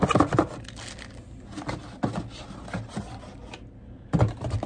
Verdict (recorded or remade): recorded